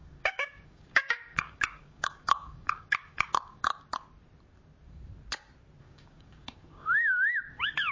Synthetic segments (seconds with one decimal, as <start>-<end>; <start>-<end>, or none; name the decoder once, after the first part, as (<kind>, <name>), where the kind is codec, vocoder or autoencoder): 0.0-3.7 (codec, DAC); 5.8-7.9